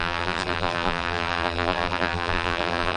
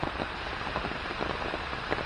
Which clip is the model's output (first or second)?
first